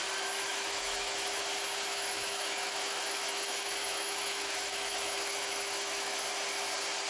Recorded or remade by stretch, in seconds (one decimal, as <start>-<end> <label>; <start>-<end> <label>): 0.0-0.5 recorded; 0.5-1.4 remade; 1.4-1.9 recorded; 1.9-6.2 remade; 6.2-7.1 recorded